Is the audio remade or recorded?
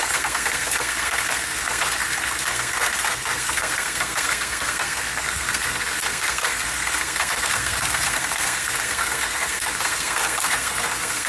remade